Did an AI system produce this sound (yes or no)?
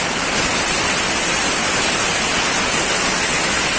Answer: no